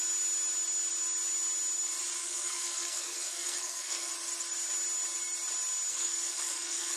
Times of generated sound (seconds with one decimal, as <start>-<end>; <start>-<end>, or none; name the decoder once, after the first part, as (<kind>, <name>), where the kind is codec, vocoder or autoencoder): 2.2-4.1 (codec, SNAC); 5.9-7.0